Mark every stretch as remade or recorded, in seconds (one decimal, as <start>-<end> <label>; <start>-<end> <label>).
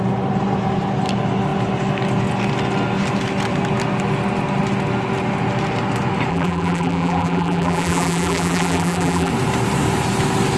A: 0.0-6.3 recorded; 6.3-9.3 remade; 9.3-10.6 recorded